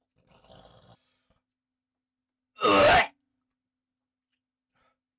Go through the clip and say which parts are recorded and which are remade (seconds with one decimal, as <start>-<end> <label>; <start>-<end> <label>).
0.0-5.2 recorded

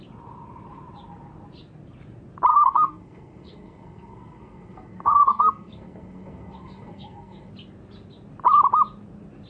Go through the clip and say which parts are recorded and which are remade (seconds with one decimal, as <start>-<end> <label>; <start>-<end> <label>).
0.0-2.5 recorded; 2.5-7.5 remade; 7.5-9.5 recorded